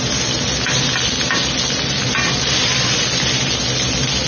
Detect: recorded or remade recorded